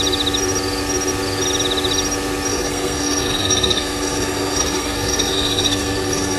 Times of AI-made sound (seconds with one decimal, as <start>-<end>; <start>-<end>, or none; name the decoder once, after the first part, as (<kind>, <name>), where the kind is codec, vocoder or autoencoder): 2.5-6.4 (codec, SNAC)